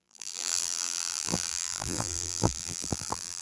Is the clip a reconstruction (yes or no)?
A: yes